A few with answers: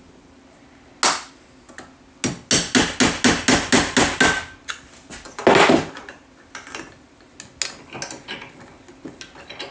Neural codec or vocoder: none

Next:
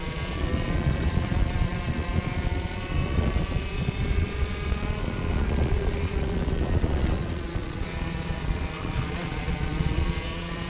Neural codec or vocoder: vocoder, Vocos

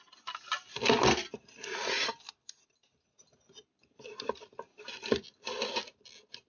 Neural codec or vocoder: none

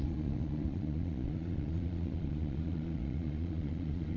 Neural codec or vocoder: vocoder, Vocos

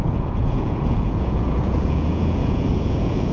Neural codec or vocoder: vocoder, Vocos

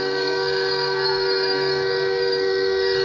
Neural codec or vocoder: codec, SNAC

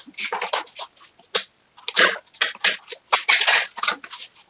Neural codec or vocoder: none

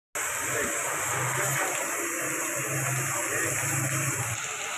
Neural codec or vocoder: none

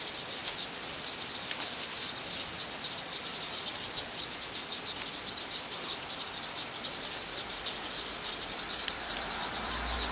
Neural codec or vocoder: none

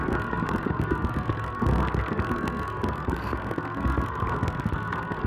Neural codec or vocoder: codec, SNAC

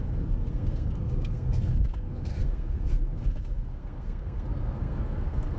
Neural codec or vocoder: codec, SNAC